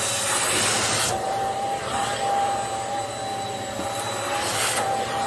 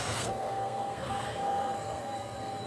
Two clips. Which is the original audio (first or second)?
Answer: first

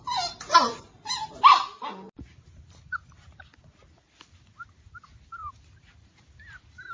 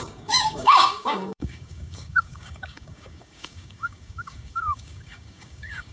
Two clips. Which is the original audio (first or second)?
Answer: first